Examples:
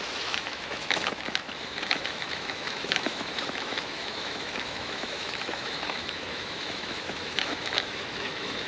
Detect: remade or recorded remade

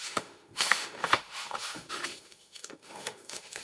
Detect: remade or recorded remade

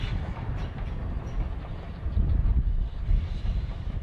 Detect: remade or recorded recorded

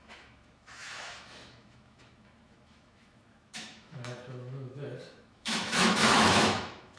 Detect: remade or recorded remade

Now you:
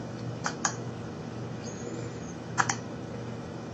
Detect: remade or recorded remade